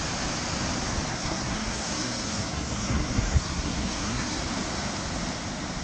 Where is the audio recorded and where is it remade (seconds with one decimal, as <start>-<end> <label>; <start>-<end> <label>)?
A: 0.0-1.1 recorded; 1.1-4.4 remade; 4.4-5.8 recorded